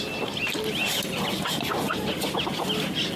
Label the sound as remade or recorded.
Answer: recorded